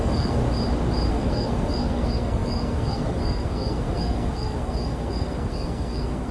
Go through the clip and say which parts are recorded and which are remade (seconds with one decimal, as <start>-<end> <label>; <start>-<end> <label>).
0.0-0.4 remade; 0.4-1.1 recorded; 1.1-6.3 remade